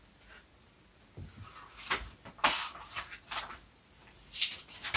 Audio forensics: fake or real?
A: real